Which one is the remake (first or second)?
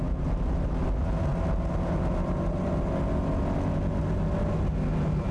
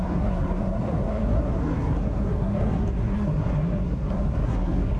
second